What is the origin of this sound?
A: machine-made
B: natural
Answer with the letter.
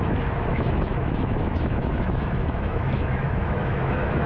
A